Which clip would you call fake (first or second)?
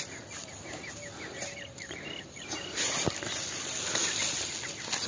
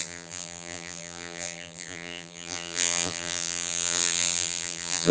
second